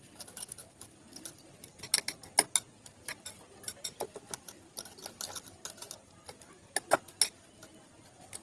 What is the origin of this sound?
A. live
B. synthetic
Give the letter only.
A